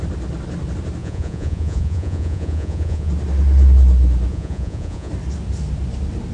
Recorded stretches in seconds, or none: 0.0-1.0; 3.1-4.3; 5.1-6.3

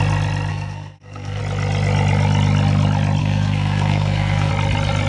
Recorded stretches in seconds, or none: 0.0-0.5; 1.4-3.2; 4.5-5.1

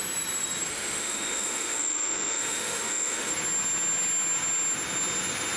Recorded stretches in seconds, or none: 0.0-0.7; 3.3-5.6

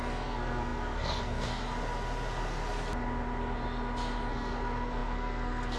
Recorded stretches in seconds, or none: 1.6-4.3